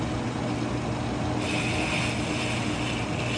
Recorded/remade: recorded